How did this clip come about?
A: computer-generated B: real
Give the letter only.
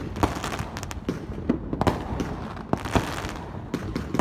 B